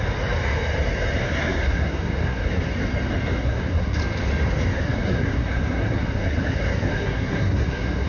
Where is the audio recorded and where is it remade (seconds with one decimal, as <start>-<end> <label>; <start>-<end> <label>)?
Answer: 0.0-1.2 recorded; 1.2-2.6 remade; 2.6-3.4 recorded; 3.4-4.0 remade; 4.0-4.7 recorded; 4.7-8.1 remade